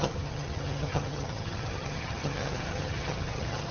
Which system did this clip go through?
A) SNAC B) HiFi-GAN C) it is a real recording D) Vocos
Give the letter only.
B